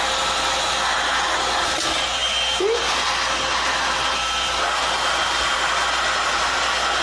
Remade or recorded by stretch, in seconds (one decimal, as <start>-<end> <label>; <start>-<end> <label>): 0.0-7.0 recorded